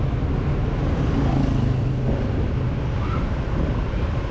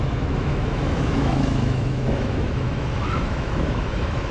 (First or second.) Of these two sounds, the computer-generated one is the second